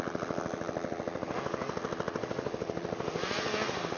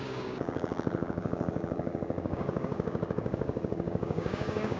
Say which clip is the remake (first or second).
second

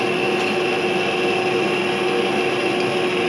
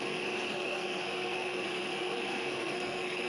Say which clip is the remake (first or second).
second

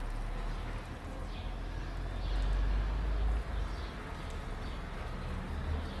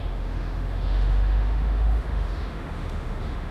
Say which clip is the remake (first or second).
second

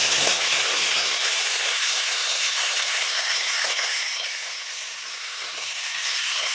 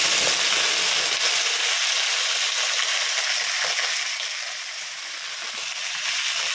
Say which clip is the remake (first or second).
first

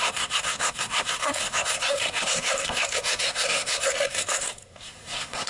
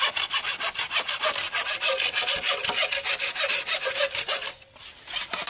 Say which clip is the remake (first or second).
first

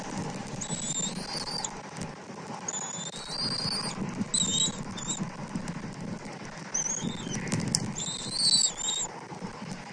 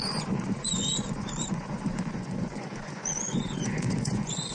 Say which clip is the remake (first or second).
second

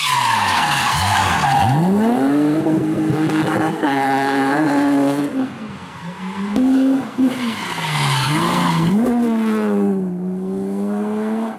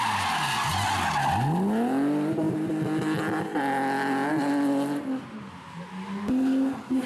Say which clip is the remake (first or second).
first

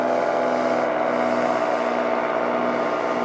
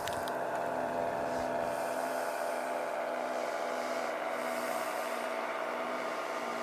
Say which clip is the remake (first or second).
second